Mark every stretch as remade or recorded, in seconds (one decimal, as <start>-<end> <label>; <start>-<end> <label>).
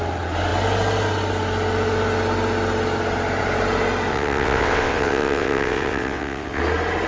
0.0-4.1 recorded; 4.1-6.6 remade; 6.6-7.1 recorded